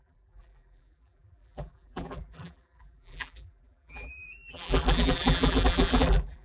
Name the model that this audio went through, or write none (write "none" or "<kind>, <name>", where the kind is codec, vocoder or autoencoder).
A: vocoder, BigVGAN v2